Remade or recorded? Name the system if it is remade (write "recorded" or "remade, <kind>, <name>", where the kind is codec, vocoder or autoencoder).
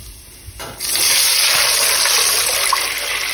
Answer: recorded